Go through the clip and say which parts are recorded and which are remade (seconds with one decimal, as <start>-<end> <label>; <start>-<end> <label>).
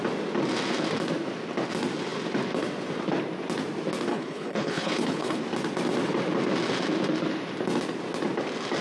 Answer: 0.0-4.1 recorded; 4.1-5.4 remade; 5.4-8.8 recorded